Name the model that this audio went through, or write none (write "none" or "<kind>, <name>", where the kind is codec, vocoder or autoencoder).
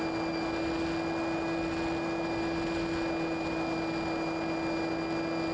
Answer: none